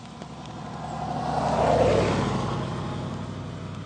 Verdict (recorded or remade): recorded